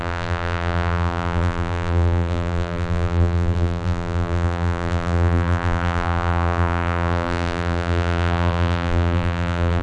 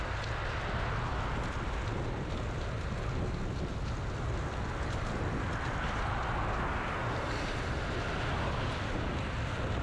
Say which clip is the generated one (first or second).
first